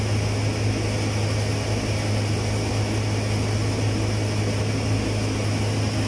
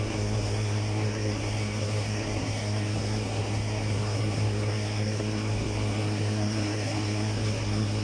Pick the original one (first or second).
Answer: first